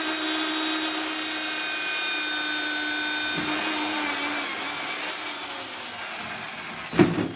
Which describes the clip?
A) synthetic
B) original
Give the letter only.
B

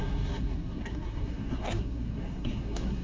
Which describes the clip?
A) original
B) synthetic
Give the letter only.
B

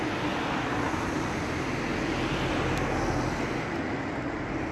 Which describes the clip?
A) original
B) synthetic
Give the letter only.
A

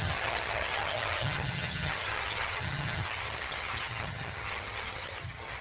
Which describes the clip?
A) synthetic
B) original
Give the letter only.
A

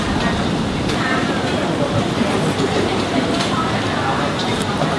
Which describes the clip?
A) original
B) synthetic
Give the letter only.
B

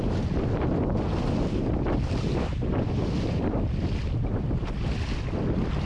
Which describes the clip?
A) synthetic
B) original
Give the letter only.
B